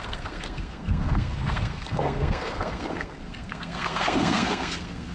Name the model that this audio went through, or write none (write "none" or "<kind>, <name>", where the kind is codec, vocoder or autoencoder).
codec, SNAC